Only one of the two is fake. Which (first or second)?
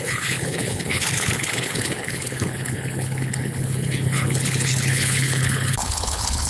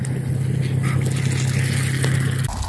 first